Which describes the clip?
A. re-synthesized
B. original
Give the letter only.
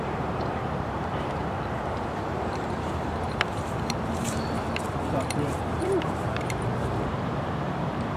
A